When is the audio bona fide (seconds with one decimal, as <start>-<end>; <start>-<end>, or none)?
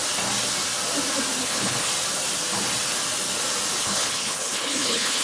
0.0-1.4; 1.9-3.8